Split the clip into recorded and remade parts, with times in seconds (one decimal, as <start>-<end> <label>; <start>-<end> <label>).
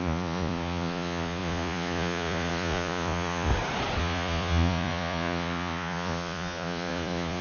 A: 0.0-3.5 remade; 3.5-4.0 recorded; 4.0-7.4 remade